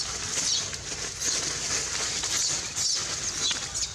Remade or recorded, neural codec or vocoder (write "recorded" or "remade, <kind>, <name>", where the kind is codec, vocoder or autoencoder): recorded